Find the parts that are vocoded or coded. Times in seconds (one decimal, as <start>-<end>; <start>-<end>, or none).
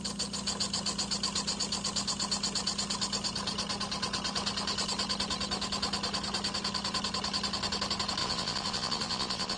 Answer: 8.2-9.6